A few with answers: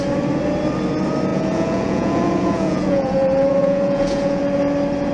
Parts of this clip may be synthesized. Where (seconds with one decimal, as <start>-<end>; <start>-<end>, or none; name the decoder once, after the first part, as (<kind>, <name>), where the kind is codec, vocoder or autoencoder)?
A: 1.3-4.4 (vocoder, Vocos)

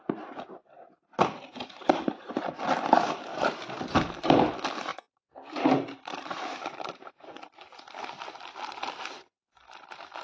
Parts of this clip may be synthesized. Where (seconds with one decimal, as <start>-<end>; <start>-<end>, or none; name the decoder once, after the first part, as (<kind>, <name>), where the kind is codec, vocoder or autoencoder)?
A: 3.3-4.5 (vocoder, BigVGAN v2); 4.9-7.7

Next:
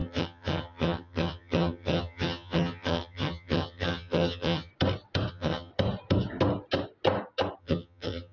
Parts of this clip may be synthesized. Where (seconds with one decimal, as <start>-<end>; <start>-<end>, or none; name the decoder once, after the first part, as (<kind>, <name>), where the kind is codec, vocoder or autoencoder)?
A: 0.0-4.7 (vocoder, HiFi-GAN); 5.3-5.7; 7.6-8.3

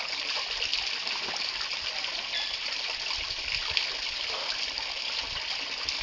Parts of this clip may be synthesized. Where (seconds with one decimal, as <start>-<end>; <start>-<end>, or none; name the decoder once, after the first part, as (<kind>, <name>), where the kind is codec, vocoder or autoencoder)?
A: none